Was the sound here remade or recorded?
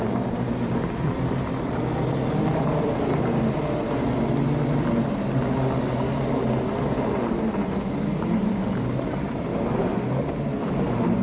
recorded